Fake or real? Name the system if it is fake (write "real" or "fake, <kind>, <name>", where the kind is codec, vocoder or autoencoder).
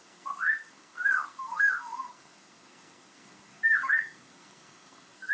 fake, codec, SNAC